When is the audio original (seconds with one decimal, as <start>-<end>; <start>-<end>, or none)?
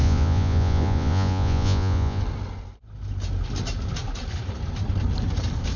2.2-5.8